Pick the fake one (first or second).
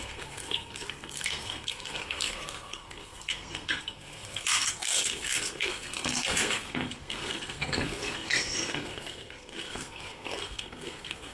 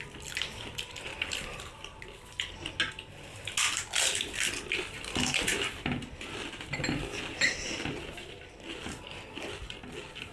first